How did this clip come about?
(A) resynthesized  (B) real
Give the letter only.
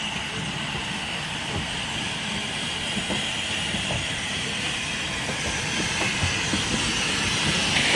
B